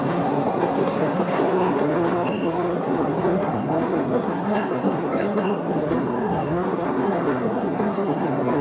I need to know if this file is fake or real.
fake